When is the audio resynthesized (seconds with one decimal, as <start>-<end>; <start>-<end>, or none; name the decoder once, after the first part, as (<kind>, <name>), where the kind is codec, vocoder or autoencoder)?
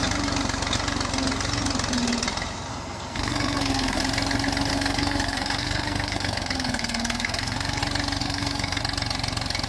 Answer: 2.7-4.0 (codec, SNAC); 4.7-7.8; 8.2-8.8